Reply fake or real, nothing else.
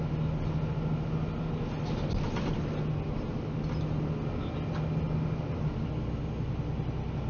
real